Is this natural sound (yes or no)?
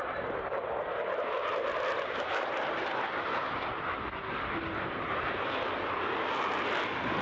yes